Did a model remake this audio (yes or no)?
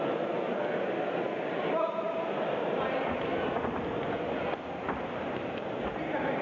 no